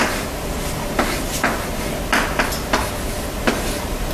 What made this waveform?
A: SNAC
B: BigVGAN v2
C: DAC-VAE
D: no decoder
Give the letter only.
D